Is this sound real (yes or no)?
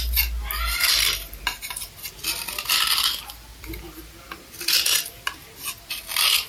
yes